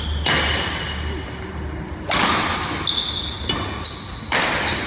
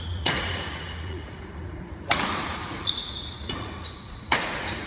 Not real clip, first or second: second